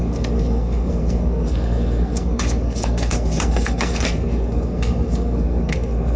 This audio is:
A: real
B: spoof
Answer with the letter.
B